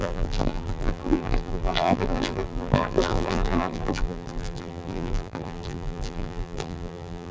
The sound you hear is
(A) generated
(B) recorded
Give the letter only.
A